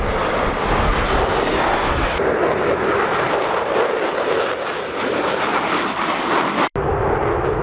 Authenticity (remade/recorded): recorded